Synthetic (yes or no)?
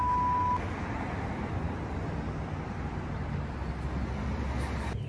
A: no